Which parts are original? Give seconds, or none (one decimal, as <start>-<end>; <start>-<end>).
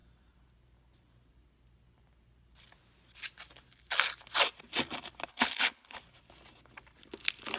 0.0-5.3; 6.0-7.6